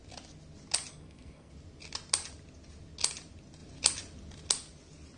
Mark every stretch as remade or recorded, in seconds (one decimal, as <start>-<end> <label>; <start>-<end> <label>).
0.0-0.9 recorded; 0.9-1.5 remade; 1.5-5.2 recorded